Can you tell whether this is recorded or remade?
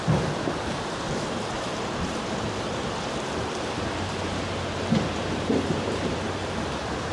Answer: remade